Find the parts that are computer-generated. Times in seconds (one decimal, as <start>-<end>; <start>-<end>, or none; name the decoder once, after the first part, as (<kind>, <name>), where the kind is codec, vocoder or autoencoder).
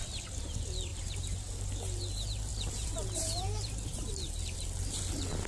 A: 0.9-1.7 (vocoder, BigVGAN v2); 2.5-4.1